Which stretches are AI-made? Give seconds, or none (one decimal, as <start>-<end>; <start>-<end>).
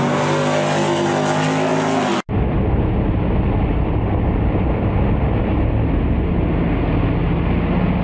none